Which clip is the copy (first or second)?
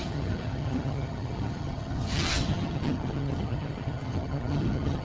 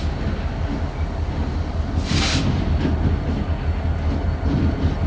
first